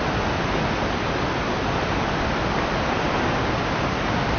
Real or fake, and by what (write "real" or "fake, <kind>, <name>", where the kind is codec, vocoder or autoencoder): real